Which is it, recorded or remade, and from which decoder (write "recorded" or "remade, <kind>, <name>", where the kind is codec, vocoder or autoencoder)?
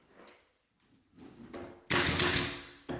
recorded